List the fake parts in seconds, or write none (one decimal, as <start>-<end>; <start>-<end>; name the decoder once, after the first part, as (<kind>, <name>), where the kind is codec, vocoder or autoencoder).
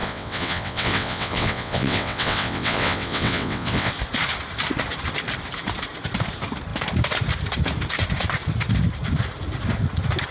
0.0-3.9 (vocoder, WaveNeXt)